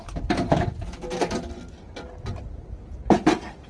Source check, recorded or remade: recorded